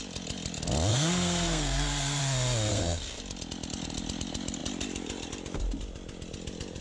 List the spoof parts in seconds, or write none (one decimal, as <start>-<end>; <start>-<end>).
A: 0.9-2.2; 2.7-3.2